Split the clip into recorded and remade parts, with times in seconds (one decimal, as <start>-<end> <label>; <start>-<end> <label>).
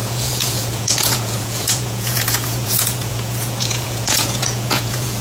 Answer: 0.0-5.2 remade